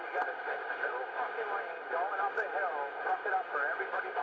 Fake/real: real